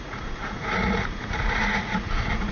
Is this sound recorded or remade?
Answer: remade